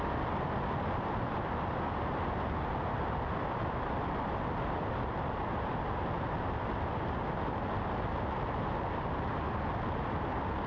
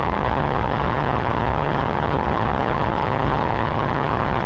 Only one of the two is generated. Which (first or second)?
second